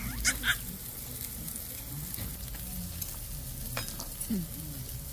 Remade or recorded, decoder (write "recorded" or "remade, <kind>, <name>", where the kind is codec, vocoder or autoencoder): recorded